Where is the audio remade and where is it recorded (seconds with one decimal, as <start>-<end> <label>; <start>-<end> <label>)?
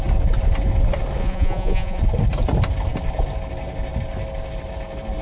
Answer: 0.0-1.2 recorded; 1.2-2.0 remade; 2.0-5.2 recorded